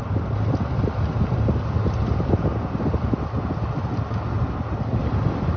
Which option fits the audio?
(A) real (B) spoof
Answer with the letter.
A